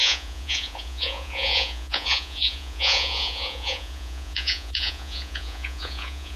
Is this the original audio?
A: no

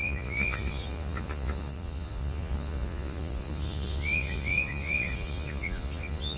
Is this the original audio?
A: no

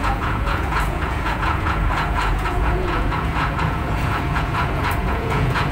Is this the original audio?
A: no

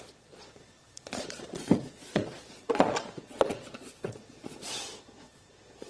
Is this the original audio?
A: no